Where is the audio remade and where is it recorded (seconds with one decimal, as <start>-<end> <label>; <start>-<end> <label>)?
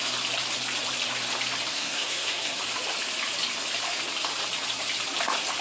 0.0-1.7 recorded; 1.7-2.6 remade; 2.6-5.6 recorded